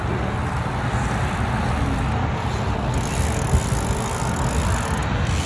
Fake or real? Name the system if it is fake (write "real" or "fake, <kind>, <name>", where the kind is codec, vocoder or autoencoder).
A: real